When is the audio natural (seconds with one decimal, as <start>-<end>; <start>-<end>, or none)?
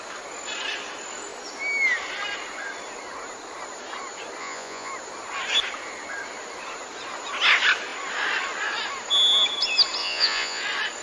0.0-4.4; 4.9-10.0; 10.6-11.0